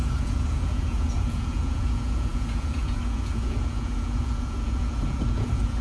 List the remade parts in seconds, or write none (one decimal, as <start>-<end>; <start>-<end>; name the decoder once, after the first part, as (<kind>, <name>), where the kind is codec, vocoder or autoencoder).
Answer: 0.0-5.8 (vocoder, Vocos)